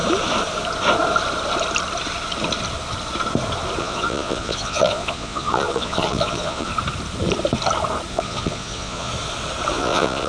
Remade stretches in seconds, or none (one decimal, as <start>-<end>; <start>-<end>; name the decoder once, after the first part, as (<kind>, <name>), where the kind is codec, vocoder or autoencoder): 3.8-6.7 (vocoder, Vocos); 8.1-9.1; 9.7-10.3